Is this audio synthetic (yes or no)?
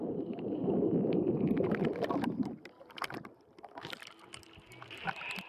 no